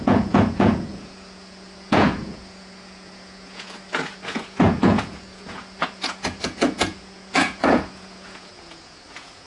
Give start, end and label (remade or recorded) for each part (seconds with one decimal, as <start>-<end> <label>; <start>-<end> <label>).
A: 0.0-9.5 remade